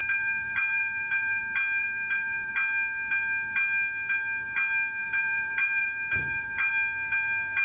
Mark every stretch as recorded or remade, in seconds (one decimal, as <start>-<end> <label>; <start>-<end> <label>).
0.0-1.4 remade; 1.4-1.8 recorded; 1.8-2.5 remade; 2.5-5.0 recorded; 5.0-6.7 remade; 6.7-7.6 recorded

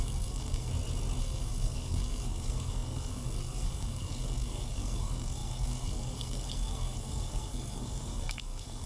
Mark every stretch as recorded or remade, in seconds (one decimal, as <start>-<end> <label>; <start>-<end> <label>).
0.0-0.7 remade; 0.7-1.2 recorded; 1.2-8.9 remade

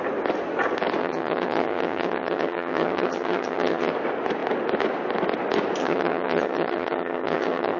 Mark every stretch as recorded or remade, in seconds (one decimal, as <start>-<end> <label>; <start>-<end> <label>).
0.0-1.0 recorded; 1.0-3.9 remade; 3.9-5.8 recorded; 5.8-7.8 remade

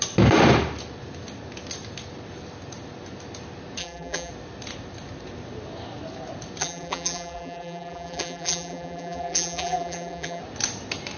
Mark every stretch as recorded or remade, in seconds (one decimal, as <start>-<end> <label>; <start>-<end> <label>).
0.0-3.8 recorded; 3.8-4.3 remade; 4.3-6.6 recorded; 6.6-10.4 remade; 10.4-11.2 recorded

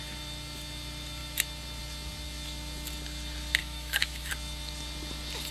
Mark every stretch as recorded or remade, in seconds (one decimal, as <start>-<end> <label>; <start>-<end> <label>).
0.0-3.6 recorded; 3.6-4.3 remade; 4.3-5.5 recorded

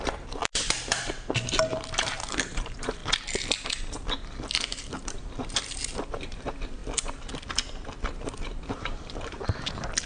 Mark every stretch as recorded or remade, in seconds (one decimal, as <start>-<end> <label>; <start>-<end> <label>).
0.0-0.4 remade; 0.4-1.7 recorded; 1.7-3.0 remade; 3.0-4.5 recorded; 4.5-6.8 remade; 6.8-8.2 recorded; 8.2-10.1 remade

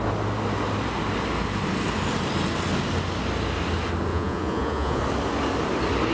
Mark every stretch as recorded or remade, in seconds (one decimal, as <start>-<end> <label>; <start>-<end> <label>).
0.0-4.1 recorded; 4.1-5.0 remade; 5.0-6.1 recorded